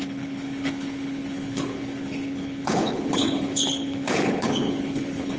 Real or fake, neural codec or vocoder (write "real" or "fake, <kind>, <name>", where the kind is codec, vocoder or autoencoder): fake, codec, HILCodec